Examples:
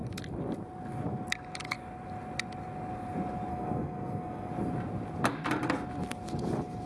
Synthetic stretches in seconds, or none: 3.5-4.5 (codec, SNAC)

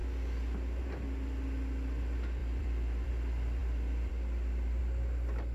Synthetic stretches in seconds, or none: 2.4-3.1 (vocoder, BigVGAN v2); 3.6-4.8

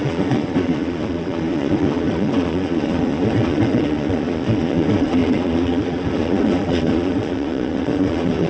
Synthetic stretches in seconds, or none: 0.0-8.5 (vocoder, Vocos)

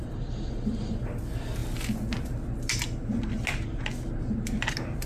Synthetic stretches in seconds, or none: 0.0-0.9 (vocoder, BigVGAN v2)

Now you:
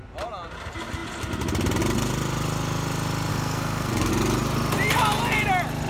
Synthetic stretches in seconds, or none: 3.3-4.1 (codec, SNAC)

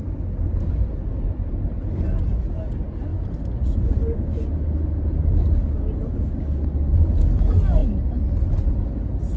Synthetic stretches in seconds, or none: none

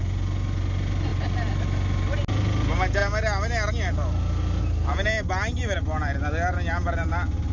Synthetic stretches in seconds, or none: none